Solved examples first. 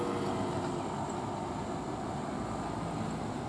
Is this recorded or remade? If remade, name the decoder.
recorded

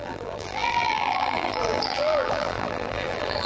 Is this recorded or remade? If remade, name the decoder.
remade, vocoder, BigVGAN v2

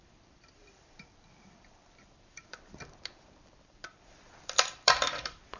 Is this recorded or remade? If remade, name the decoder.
remade, vocoder, BigVGAN v2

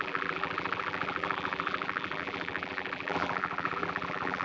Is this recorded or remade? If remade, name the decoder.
remade, vocoder, BigVGAN v2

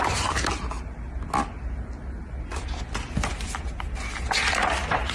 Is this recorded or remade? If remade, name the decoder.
recorded